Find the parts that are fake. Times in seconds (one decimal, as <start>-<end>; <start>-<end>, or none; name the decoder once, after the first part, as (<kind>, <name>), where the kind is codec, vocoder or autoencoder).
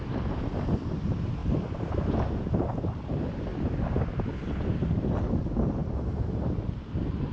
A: 1.4-2.8 (vocoder, BigVGAN v2); 3.5-5.0; 5.8-7.3